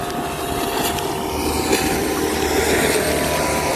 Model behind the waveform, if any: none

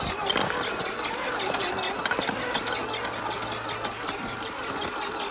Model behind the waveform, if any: none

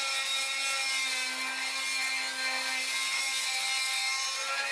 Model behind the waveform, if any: none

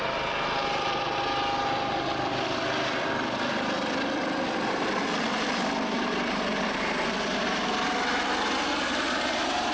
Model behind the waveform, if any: vocoder, BigVGAN v2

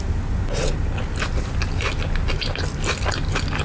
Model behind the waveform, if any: none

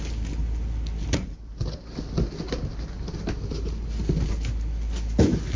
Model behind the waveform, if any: none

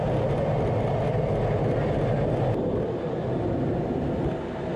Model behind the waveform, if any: none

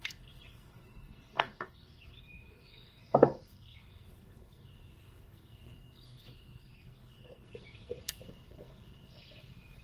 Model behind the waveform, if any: codec, SNAC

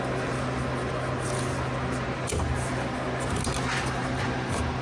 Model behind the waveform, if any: none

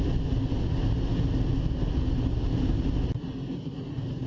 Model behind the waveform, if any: none